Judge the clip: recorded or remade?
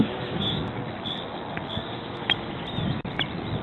recorded